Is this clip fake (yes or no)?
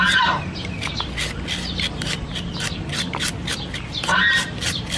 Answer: no